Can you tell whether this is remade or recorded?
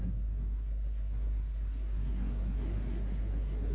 remade